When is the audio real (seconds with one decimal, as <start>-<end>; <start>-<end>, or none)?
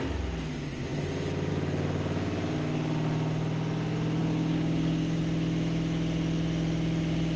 0.0-4.2; 5.2-7.4